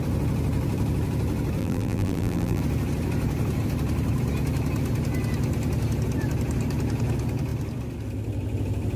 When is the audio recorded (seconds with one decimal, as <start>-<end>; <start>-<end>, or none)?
0.0-1.6; 2.6-9.0